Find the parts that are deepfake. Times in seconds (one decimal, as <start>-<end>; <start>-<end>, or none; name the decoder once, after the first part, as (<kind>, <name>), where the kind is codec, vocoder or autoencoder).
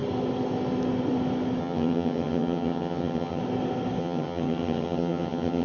1.6-3.4 (vocoder, HiFi-GAN); 4.0-5.6